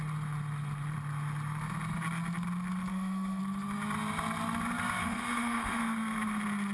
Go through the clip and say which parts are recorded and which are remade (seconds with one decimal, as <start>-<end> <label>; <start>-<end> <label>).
0.0-2.9 recorded; 2.9-3.4 remade; 3.4-5.0 recorded; 5.0-5.8 remade; 5.8-6.7 recorded